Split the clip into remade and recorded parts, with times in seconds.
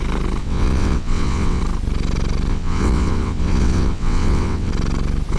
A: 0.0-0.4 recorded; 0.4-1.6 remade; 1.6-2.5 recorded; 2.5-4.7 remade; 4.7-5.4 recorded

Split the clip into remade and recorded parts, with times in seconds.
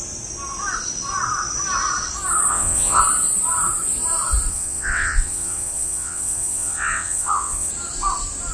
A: 0.0-2.5 recorded; 2.5-3.0 remade; 3.0-4.5 recorded; 4.5-7.7 remade; 7.7-8.5 recorded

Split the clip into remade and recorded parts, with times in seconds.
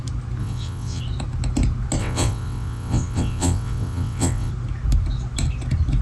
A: 0.0-0.4 recorded; 0.4-1.0 remade; 1.0-2.0 recorded; 2.0-4.5 remade; 4.5-6.0 recorded